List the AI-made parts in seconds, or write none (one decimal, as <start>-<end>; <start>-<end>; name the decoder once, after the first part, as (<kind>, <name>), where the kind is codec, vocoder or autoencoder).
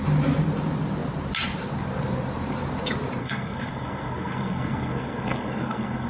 3.2-6.1 (codec, SNAC)